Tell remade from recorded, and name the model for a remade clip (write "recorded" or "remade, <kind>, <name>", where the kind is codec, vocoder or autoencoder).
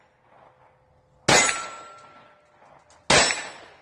recorded